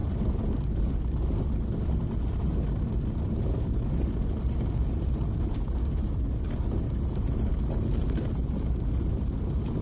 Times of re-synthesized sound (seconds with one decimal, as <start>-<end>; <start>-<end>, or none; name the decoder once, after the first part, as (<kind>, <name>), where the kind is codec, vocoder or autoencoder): none